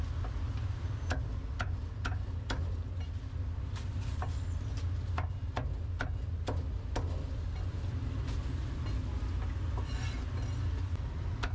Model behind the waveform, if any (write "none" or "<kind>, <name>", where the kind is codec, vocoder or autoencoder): none